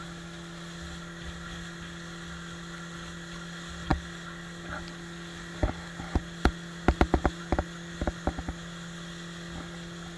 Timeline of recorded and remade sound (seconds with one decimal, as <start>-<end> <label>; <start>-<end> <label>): 0.0-10.2 recorded